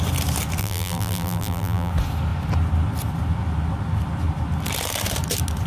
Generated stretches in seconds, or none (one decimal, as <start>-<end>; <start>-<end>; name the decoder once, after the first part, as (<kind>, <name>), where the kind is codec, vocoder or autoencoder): 0.6-1.9 (vocoder, BigVGAN v2)